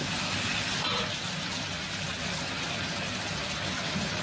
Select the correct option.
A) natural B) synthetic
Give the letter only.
A